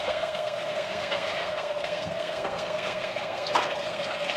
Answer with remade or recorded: remade